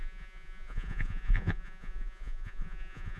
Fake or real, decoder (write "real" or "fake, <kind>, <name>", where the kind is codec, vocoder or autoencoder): fake, vocoder, Vocos